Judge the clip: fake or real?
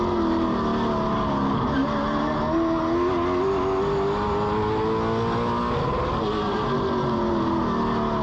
real